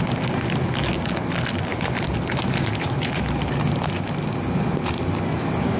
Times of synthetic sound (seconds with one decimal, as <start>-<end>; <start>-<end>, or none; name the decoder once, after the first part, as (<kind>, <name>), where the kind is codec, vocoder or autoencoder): 1.7-3.1 (vocoder, BigVGAN v2)